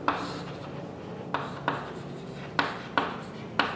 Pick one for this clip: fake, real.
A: real